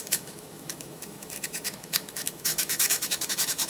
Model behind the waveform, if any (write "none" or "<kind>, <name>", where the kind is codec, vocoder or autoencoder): autoencoder, DAC-VAE